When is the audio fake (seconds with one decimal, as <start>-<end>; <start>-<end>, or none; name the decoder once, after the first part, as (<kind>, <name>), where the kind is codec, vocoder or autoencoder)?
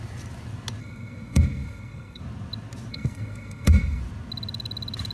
0.8-2.2 (codec, SNAC); 2.9-4.0